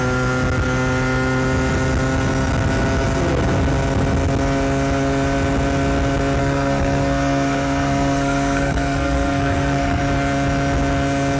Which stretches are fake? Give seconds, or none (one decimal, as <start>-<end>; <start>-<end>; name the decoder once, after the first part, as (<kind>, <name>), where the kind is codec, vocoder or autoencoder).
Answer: 6.4-10.0 (codec, SNAC)